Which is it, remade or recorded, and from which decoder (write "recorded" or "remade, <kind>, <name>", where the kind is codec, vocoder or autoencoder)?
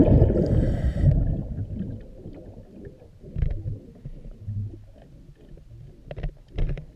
recorded